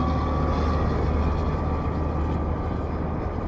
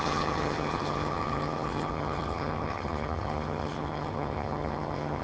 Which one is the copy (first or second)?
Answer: second